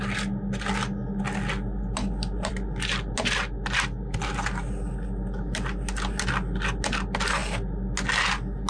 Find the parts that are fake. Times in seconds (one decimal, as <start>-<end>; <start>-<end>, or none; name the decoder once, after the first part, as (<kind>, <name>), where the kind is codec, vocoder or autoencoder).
none